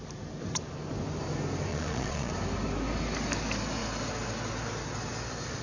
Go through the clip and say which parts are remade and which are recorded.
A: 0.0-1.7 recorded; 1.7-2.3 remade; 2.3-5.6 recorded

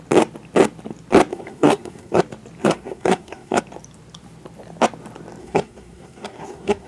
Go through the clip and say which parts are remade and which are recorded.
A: 0.0-1.3 recorded; 1.3-2.2 remade; 2.2-2.6 recorded; 2.6-3.6 remade; 3.6-5.4 recorded; 5.4-6.9 remade

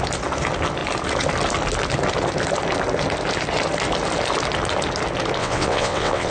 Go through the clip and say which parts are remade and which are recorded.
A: 0.0-5.4 recorded; 5.4-6.3 remade

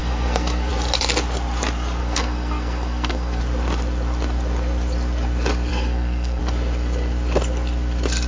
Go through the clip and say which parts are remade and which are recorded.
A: 0.0-0.7 remade; 0.7-2.0 recorded; 2.0-3.4 remade; 3.4-5.7 recorded; 5.7-6.4 remade; 6.4-8.3 recorded

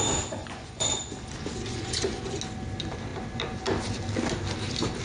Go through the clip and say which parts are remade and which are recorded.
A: 0.0-0.4 recorded; 0.4-1.1 remade; 1.1-1.7 recorded; 1.7-2.4 remade; 2.4-5.0 recorded

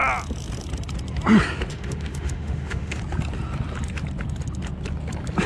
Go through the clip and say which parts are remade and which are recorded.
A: 0.0-1.7 recorded; 1.7-3.0 remade; 3.0-5.5 recorded

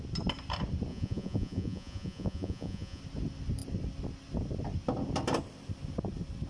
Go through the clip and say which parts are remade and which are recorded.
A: 0.0-0.9 recorded; 0.9-3.0 remade; 3.0-6.5 recorded

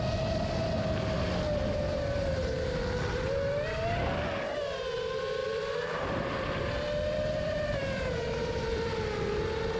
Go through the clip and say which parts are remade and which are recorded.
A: 0.0-5.4 recorded; 5.4-9.0 remade; 9.0-9.8 recorded